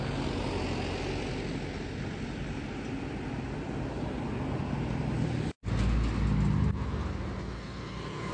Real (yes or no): yes